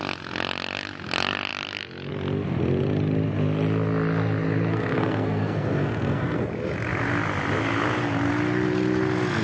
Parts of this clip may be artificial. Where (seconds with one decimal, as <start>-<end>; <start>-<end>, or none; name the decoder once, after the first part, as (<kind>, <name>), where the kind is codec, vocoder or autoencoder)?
4.7-6.5 (codec, SNAC)